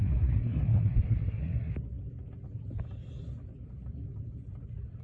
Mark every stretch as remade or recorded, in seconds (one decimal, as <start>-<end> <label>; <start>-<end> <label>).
0.0-1.7 remade; 1.7-5.0 recorded